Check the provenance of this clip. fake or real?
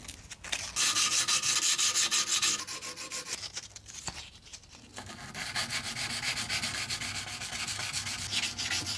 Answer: real